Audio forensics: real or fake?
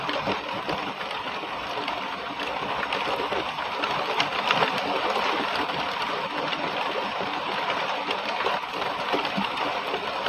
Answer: fake